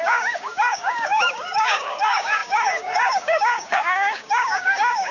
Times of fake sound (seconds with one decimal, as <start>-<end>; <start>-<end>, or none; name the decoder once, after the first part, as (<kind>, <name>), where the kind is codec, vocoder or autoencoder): 0.0-5.1 (codec, DAC)